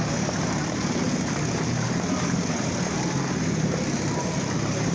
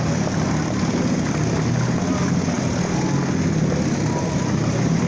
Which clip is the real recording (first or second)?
second